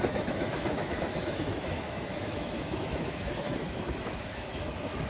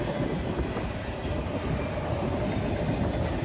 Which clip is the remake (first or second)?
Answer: first